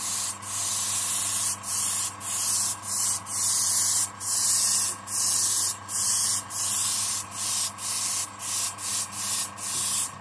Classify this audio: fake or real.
real